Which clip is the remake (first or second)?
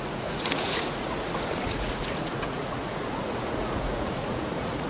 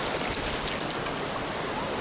first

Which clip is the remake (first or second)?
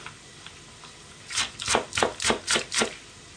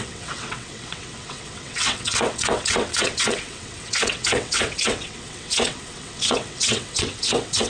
second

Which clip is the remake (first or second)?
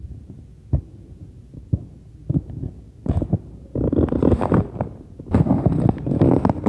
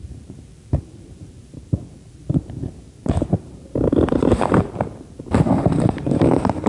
second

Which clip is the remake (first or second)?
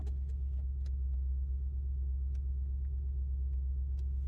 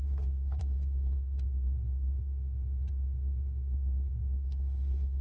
second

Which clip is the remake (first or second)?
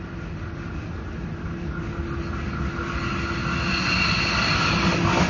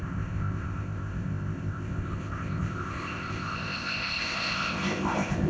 second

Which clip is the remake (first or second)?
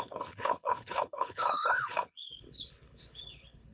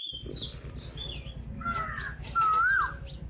first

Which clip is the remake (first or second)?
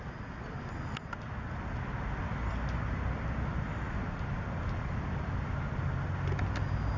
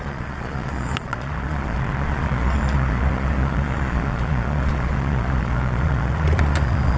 second